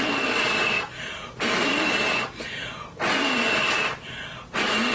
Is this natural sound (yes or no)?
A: yes